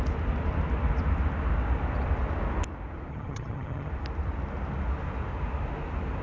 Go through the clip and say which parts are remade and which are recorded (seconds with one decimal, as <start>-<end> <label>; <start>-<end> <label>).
0.0-3.1 recorded; 3.1-3.9 remade; 3.9-6.2 recorded